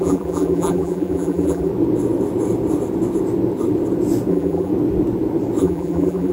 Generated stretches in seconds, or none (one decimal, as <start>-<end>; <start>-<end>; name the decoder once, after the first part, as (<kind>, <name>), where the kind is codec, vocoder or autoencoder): 0.0-1.7 (vocoder, BigVGAN v2); 4.3-4.7; 5.6-6.3